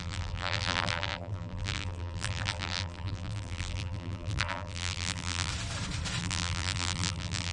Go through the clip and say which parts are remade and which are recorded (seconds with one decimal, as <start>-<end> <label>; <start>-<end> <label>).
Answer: 0.0-5.5 remade; 5.5-6.2 recorded; 6.2-7.5 remade